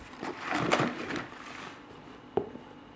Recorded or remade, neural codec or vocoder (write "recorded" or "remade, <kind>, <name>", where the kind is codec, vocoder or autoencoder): remade, vocoder, BigVGAN v2